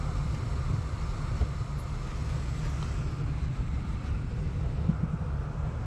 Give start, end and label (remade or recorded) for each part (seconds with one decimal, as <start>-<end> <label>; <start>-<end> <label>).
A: 0.0-3.4 recorded; 3.4-4.6 remade; 4.6-5.9 recorded